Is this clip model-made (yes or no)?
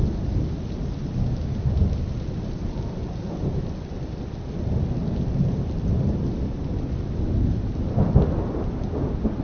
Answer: no